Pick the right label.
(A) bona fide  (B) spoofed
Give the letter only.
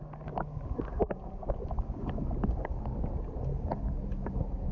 A